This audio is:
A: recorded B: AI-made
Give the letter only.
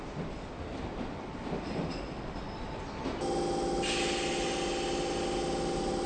A